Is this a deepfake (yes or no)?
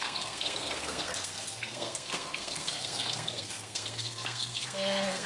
yes